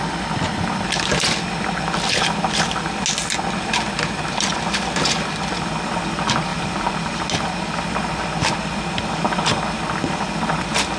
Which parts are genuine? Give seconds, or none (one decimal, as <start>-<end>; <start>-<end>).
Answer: 0.0-11.0